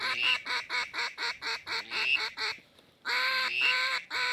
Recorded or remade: remade